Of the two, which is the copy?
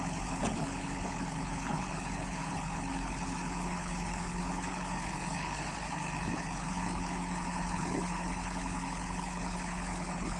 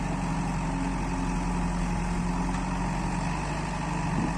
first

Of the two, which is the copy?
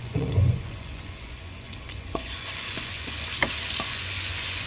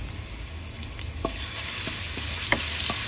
first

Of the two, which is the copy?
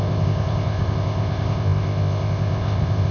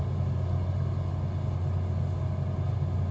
first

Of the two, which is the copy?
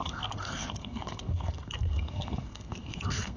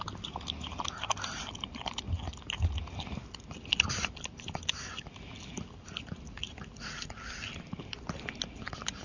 first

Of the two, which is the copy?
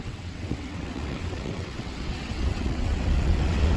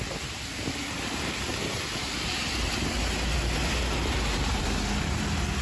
first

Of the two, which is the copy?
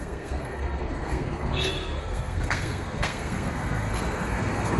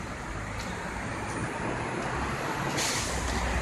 first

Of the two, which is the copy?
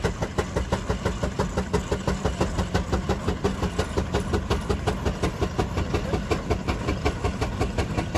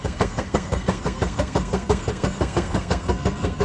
second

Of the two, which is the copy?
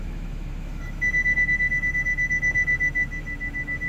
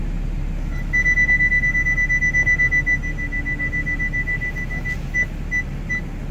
first